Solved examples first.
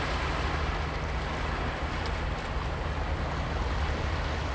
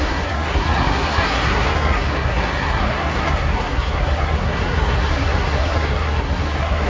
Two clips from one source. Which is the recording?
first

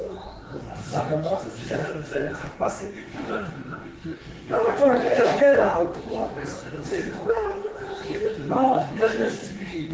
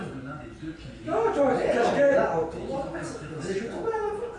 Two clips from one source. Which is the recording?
second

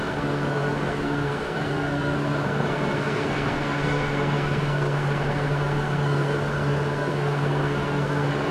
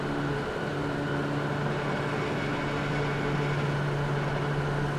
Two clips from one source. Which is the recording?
second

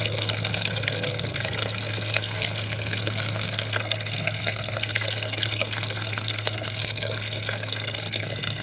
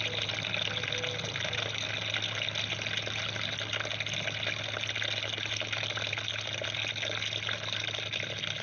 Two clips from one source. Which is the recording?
second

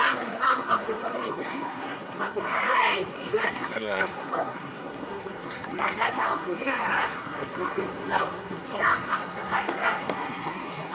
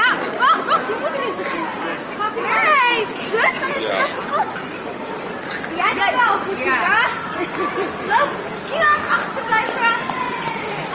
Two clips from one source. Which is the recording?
second